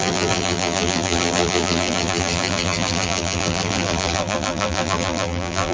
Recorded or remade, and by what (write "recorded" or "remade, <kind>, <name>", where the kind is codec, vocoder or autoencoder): remade, vocoder, BigVGAN v2